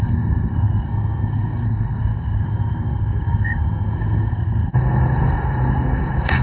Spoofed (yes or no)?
yes